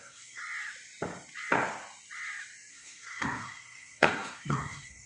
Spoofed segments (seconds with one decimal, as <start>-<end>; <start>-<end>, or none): 0.0-0.4; 2.7-5.1